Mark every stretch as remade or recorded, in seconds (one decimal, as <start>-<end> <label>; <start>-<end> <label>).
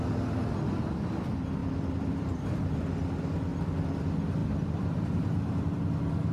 0.0-1.6 recorded; 1.6-2.7 remade; 2.7-4.4 recorded; 4.4-5.8 remade; 5.8-6.3 recorded